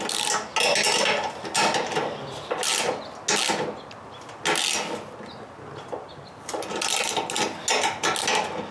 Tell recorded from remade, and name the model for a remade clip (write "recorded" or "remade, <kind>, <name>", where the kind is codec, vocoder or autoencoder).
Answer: recorded